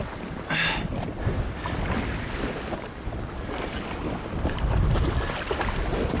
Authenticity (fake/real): real